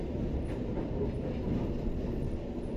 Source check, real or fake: real